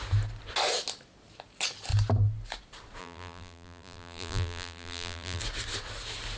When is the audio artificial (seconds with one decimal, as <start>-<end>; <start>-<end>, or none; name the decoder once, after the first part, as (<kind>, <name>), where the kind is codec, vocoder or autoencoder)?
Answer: 3.0-5.4 (vocoder, BigVGAN v2)